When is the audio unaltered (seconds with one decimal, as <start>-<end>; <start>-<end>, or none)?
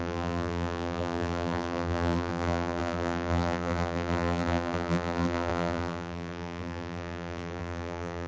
none